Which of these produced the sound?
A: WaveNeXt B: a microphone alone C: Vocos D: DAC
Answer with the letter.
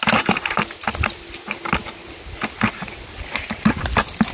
B